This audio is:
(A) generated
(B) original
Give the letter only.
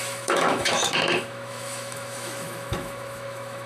A